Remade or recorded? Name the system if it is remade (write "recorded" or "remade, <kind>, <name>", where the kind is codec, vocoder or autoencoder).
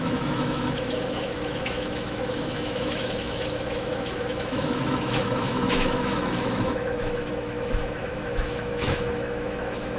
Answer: remade, autoencoder, DAC-VAE